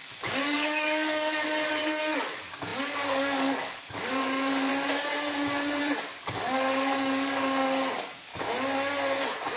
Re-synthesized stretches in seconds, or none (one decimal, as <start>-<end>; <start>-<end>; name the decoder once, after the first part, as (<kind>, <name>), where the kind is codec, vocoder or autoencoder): 0.0-4.7 (codec, DAC); 6.2-8.3